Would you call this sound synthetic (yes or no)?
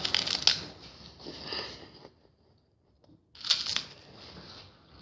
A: no